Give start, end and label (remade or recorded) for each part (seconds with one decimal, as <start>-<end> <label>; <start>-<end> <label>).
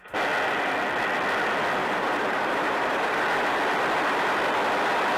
0.0-1.8 recorded; 1.8-3.2 remade; 3.2-5.2 recorded